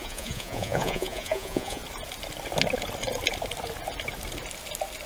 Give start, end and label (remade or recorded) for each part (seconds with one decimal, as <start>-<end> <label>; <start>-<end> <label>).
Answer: 0.0-1.8 remade; 1.8-5.1 recorded